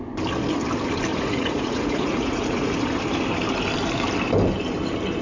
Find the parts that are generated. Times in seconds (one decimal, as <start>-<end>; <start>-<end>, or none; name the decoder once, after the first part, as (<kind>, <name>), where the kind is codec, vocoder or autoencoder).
1.1-2.7 (vocoder, Vocos)